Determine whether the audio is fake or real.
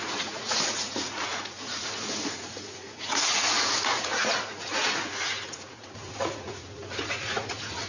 fake